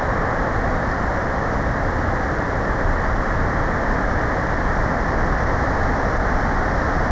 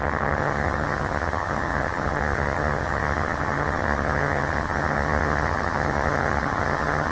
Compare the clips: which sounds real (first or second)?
first